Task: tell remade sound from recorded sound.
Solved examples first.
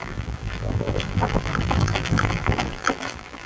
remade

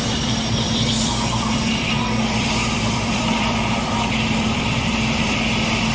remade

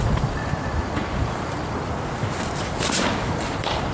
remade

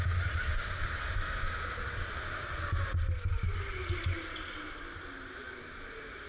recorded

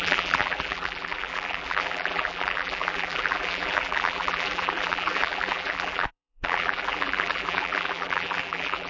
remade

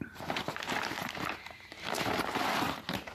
remade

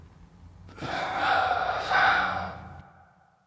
recorded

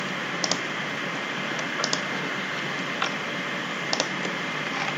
recorded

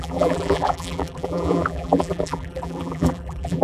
remade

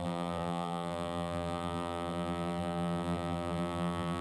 remade